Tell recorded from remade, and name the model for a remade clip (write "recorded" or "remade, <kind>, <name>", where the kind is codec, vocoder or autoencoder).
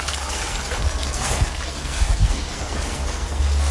remade, codec, SNAC